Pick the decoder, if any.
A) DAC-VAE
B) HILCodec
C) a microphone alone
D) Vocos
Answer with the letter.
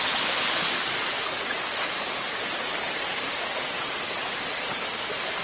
C